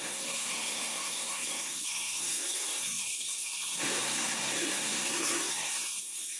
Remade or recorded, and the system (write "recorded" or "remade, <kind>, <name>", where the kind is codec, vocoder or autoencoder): remade, codec, SNAC